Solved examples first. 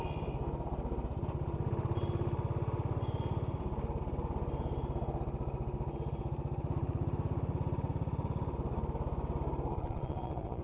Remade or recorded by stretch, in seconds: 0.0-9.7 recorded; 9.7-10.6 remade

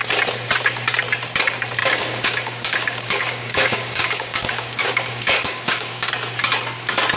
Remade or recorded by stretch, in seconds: 0.0-1.8 recorded; 1.8-6.1 remade; 6.1-7.2 recorded

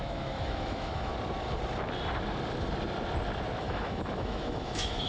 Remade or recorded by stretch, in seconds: 0.0-1.1 remade; 1.1-3.6 recorded; 3.6-5.1 remade

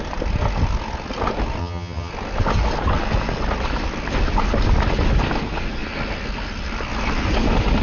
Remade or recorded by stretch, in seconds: 0.0-1.6 recorded; 1.6-2.1 remade; 2.1-7.8 recorded

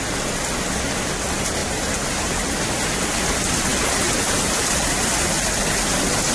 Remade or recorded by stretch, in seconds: 0.0-1.6 recorded; 1.6-2.3 remade; 2.3-6.3 recorded

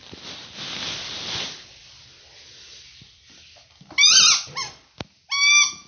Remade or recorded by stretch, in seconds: 0.0-5.9 recorded

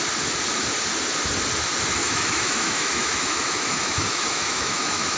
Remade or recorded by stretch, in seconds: 0.0-2.0 recorded; 2.0-5.2 remade

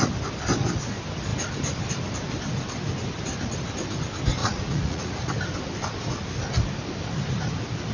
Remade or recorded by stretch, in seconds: 0.0-4.4 recorded; 4.4-5.3 remade; 5.3-7.9 recorded